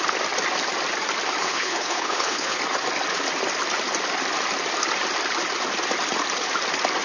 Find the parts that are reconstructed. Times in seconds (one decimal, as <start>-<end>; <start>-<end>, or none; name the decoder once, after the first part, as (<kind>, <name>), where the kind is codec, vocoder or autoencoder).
1.4-2.6 (codec, HILCodec)